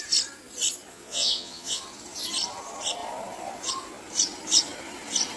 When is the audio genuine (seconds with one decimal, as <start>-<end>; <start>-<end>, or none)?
0.0-0.9; 1.8-5.4